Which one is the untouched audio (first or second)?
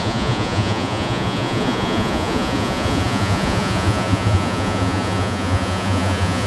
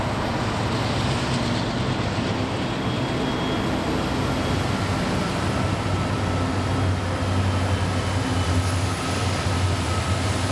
second